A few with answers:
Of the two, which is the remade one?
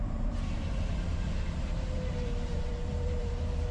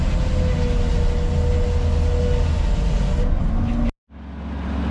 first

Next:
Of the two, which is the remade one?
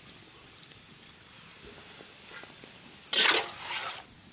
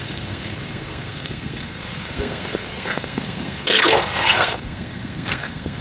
second